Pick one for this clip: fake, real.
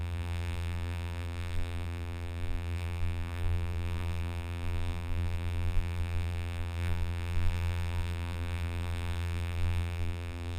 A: fake